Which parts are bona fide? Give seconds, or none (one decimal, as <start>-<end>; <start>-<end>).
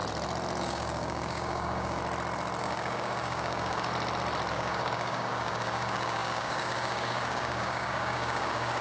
0.0-0.6; 2.0-2.6; 3.9-4.5